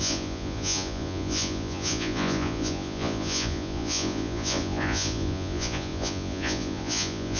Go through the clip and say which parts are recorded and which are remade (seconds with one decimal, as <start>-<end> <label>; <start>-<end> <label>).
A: 0.0-7.4 remade